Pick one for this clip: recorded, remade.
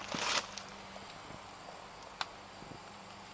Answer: recorded